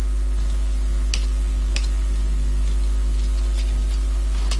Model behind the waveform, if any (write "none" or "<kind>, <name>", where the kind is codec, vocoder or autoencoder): none